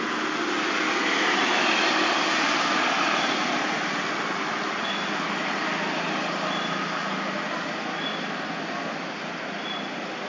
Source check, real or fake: real